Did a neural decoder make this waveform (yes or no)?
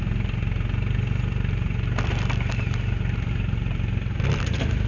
no